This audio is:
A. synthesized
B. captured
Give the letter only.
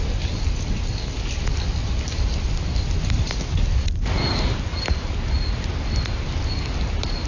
B